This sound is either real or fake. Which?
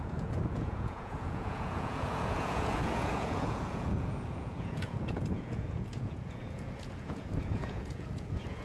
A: fake